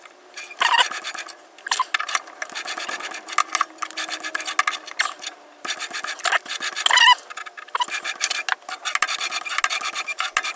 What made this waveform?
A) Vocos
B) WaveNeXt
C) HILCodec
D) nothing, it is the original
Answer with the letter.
D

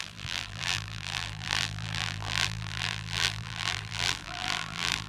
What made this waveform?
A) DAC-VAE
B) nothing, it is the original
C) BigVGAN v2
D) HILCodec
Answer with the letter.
C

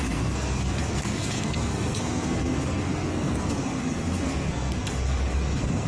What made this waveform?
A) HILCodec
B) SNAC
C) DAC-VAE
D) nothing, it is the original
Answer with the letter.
B